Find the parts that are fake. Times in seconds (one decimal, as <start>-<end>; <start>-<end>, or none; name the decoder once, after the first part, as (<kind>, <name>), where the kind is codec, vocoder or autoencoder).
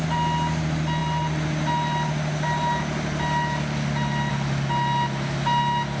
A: none